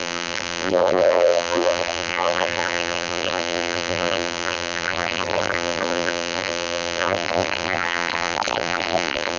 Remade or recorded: remade